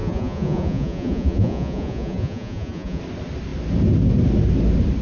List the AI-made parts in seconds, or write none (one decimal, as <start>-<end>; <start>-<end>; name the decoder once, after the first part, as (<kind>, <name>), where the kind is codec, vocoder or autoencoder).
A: 0.0-3.0 (vocoder, Vocos)